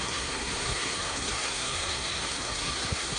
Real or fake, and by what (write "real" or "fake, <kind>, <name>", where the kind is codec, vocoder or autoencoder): fake, codec, SNAC